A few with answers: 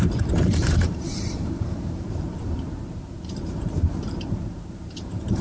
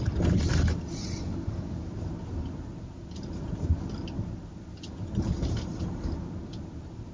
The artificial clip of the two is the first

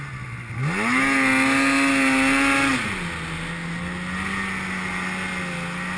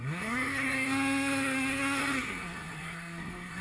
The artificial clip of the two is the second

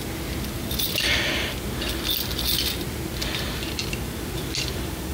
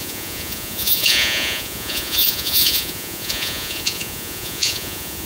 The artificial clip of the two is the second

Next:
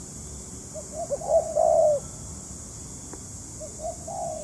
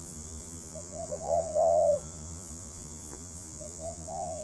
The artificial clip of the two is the second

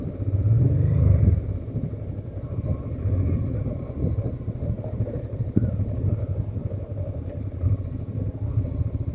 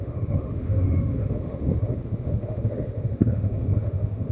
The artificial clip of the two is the second